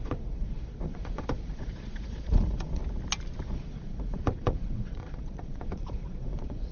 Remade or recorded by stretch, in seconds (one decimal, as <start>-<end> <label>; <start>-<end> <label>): 0.0-2.8 remade; 2.8-3.4 recorded; 3.4-6.7 remade